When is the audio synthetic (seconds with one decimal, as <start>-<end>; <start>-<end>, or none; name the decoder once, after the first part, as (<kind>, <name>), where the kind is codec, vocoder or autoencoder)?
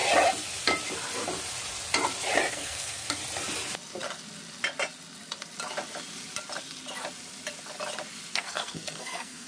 2.5-3.2 (codec, SNAC); 8.3-9.5